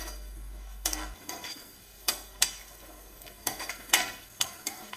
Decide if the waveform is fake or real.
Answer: fake